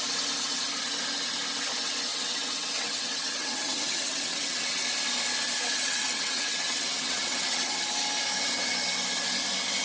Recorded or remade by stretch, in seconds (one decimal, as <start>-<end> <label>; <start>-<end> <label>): 0.0-2.1 recorded; 2.1-4.9 remade; 4.9-5.6 recorded; 5.6-7.8 remade; 7.8-9.8 recorded